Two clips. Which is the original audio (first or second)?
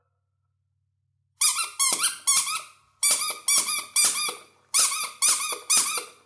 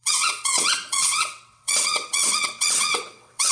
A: first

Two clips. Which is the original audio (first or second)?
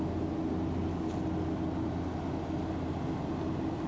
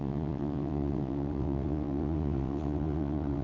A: first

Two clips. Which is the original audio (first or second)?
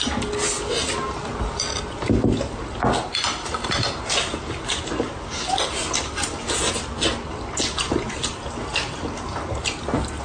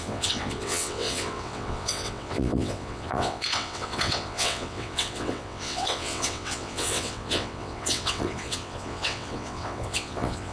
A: first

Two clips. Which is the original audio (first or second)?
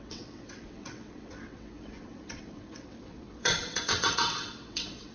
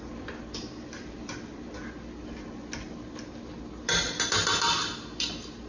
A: second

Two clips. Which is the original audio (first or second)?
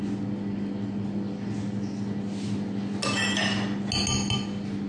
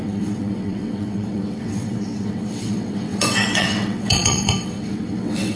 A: first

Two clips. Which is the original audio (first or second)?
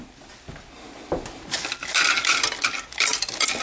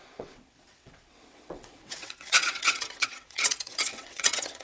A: first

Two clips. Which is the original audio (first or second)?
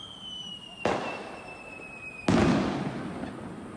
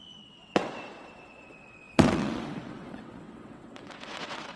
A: first